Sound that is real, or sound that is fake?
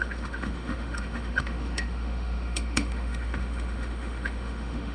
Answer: fake